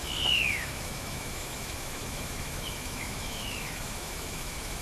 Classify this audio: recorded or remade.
remade